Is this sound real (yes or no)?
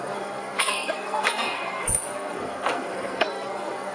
no